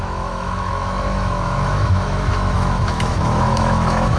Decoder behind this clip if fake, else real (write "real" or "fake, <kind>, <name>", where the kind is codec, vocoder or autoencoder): fake, autoencoder, DAC-VAE